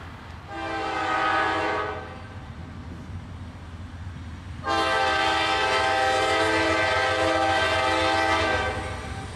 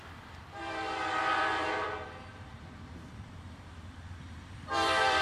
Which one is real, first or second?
first